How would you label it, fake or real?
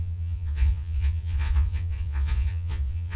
fake